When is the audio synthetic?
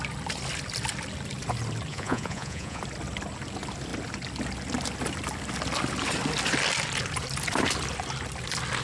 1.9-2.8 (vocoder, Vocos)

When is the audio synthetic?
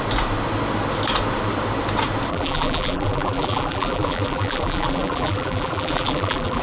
2.3-6.6 (vocoder, BigVGAN v2)